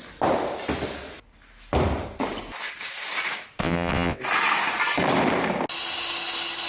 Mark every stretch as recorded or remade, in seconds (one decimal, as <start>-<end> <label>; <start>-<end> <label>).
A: 0.0-3.6 recorded; 3.6-4.2 remade; 4.2-6.7 recorded